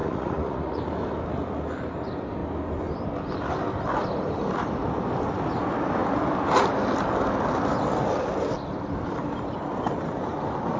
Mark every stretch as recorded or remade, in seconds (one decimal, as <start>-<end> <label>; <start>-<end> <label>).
0.0-0.8 remade; 0.8-10.8 recorded